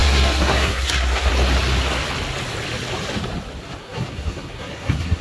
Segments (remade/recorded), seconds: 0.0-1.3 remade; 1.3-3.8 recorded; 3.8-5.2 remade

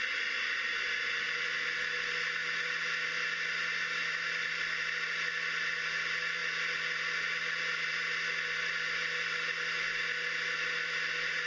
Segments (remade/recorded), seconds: 0.0-11.5 recorded

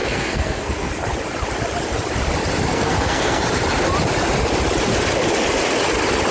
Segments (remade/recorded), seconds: 0.0-0.9 remade; 0.9-2.7 recorded; 2.7-3.4 remade; 3.4-6.3 recorded